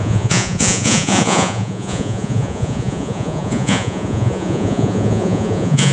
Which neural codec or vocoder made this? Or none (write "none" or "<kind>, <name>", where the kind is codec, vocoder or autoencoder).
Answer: vocoder, Vocos